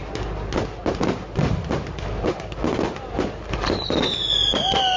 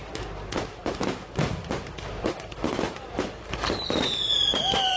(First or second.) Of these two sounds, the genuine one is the first